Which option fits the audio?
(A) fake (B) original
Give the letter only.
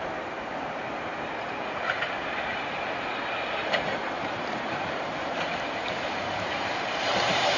A